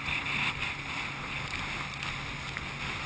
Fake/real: real